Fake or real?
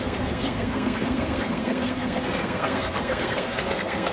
fake